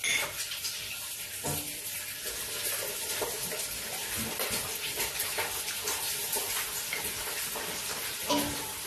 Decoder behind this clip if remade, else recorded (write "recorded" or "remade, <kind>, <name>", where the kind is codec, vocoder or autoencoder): recorded